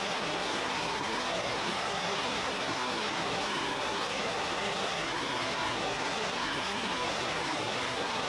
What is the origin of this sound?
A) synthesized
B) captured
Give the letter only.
A